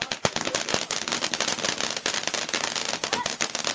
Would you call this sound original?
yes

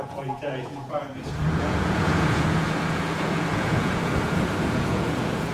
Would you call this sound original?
no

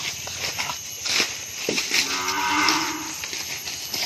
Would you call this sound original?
yes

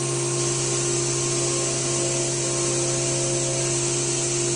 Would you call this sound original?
yes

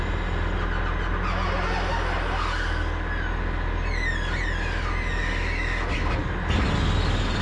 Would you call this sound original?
yes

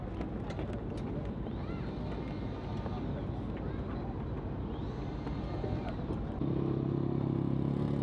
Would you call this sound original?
yes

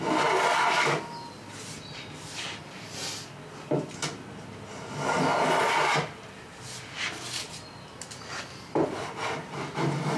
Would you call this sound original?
yes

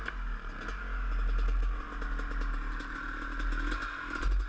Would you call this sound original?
yes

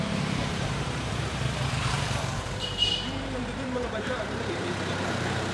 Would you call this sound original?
no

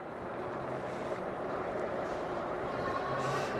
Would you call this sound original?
no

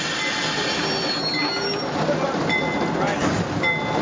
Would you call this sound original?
yes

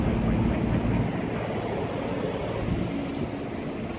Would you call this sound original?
yes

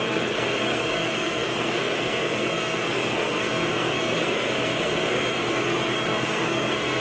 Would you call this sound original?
no